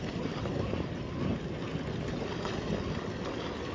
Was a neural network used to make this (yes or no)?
no